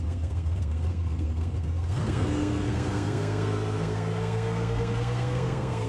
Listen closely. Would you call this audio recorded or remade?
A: remade